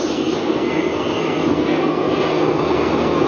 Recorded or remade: remade